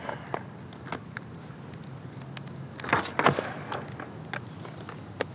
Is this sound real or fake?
real